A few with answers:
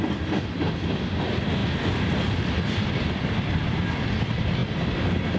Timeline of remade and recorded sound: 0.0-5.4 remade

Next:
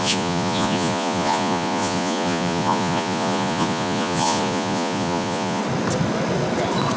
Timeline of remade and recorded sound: 0.0-5.6 remade; 5.6-7.0 recorded

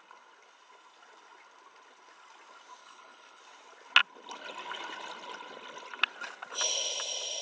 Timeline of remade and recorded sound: 0.0-2.8 recorded; 2.8-3.4 remade; 3.4-7.4 recorded

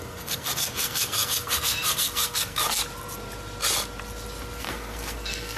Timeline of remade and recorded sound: 0.0-2.8 remade; 2.8-4.6 recorded; 4.6-5.6 remade

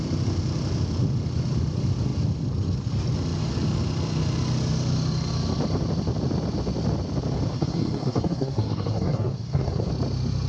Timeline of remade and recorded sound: 0.0-7.5 recorded; 7.5-9.9 remade; 9.9-10.5 recorded

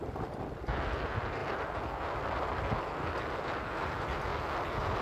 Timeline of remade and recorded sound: 0.0-5.0 recorded

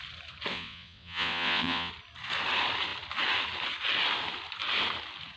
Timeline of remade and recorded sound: 0.0-0.5 recorded; 0.5-1.9 remade; 1.9-5.4 recorded

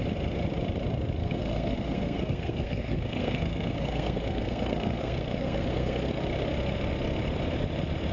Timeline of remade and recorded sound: 0.0-1.2 recorded; 1.2-6.1 remade; 6.1-8.1 recorded